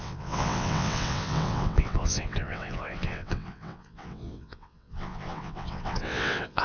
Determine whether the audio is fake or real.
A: fake